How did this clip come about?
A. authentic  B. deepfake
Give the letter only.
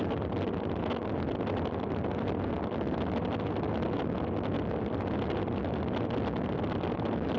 A